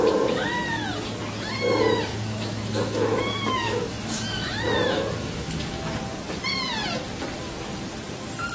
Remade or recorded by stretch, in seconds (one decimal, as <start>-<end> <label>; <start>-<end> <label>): 0.0-2.1 recorded; 2.1-5.9 remade; 5.9-8.5 recorded